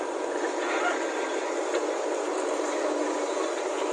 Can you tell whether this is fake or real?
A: real